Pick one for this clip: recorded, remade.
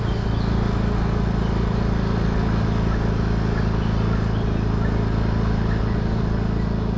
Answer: recorded